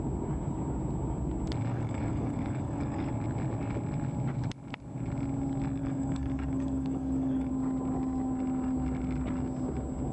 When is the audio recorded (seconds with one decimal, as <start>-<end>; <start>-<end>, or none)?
0.0-1.7; 3.1-5.8; 7.5-10.1